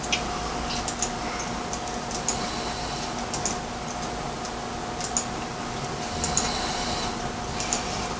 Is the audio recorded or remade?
recorded